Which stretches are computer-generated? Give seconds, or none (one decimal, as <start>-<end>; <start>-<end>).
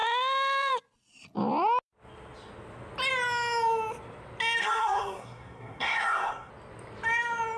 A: 4.6-6.5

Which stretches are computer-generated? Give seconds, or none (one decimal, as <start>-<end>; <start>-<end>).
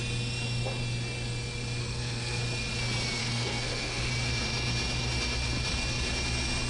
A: 1.8-2.4; 3.2-4.1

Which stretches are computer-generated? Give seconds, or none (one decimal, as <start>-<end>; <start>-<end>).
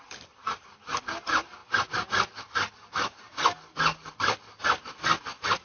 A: none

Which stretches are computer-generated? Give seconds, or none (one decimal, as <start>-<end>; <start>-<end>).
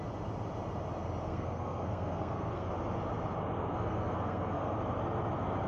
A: 1.3-2.7; 3.6-4.8